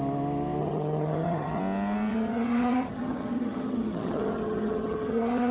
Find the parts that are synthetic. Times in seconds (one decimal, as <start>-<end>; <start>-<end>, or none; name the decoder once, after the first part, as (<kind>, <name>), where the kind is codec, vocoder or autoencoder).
0.6-1.6 (vocoder, HiFi-GAN); 2.1-5.5